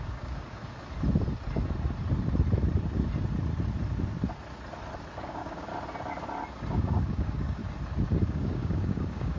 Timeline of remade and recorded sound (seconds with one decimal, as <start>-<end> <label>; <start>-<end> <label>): 0.0-0.6 remade; 0.6-5.1 recorded; 5.1-5.7 remade; 5.7-6.7 recorded; 6.7-7.6 remade; 7.6-8.2 recorded; 8.2-9.4 remade

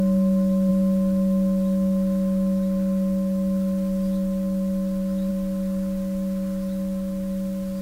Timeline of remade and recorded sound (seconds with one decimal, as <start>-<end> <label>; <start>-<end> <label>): 0.0-7.8 recorded

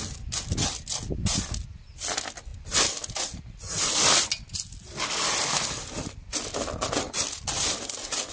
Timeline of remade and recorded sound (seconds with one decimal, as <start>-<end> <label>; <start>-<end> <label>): 0.0-8.3 recorded

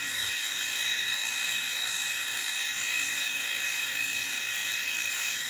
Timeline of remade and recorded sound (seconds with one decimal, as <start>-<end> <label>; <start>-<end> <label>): 0.0-5.5 remade

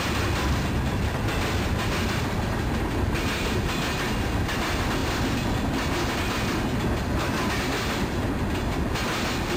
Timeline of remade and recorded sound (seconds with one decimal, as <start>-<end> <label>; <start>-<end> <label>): 0.0-9.6 recorded

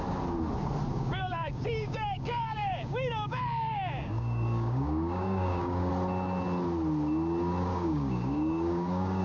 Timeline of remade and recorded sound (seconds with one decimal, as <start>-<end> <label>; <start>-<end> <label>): 0.0-0.9 recorded; 0.9-5.9 remade; 5.9-7.7 recorded; 7.7-9.2 remade

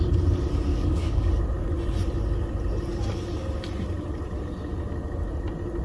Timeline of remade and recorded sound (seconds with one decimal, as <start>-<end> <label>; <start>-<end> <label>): 0.0-0.7 recorded; 0.7-1.3 remade; 1.3-5.8 recorded